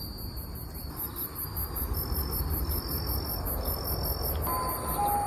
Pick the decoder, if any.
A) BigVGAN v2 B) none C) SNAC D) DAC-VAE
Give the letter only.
B